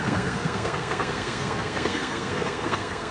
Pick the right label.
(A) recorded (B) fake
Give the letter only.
B